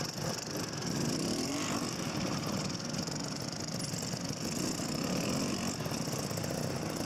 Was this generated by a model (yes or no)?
no